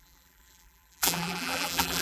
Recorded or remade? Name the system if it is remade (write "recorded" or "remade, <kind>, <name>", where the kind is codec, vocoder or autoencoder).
remade, vocoder, BigVGAN v2